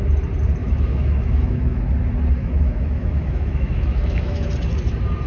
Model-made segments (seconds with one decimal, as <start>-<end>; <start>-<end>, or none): 0.6-1.8; 2.4-4.5